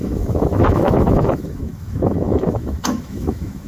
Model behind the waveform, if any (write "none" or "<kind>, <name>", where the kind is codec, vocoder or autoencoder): autoencoder, DAC-VAE